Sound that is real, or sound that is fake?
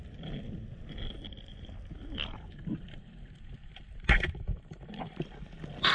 real